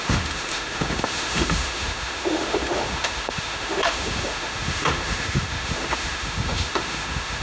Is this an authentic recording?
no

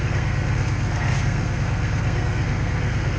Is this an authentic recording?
no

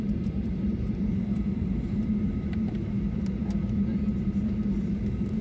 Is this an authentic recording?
no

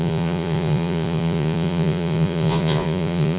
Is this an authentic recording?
no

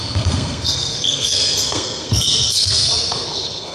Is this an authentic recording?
no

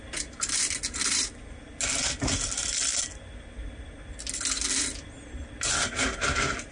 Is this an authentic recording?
yes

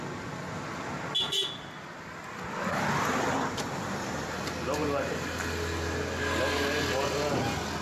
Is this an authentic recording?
yes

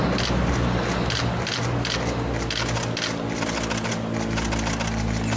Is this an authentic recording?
yes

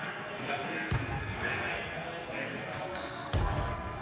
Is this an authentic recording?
no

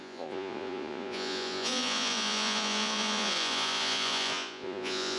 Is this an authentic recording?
no